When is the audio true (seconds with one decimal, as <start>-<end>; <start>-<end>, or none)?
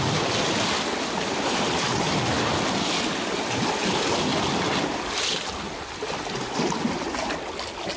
0.0-8.0